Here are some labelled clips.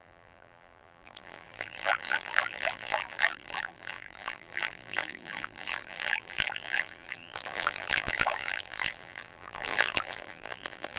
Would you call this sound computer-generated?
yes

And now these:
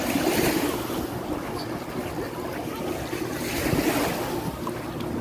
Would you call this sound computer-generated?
no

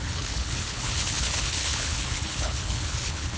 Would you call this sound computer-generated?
yes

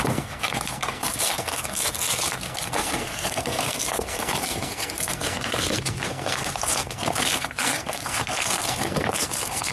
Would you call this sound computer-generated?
yes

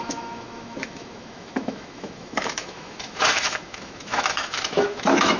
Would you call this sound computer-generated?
yes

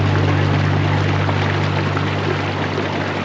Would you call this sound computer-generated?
no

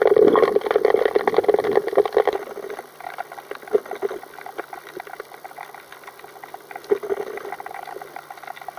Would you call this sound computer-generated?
no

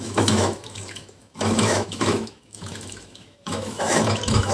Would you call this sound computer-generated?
yes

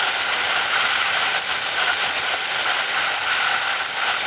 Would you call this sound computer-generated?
yes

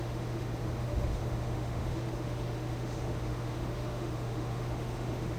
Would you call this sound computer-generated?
yes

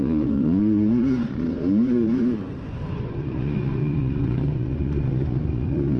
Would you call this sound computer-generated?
yes